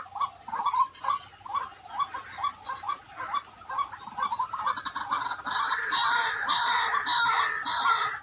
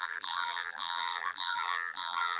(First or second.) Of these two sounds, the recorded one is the first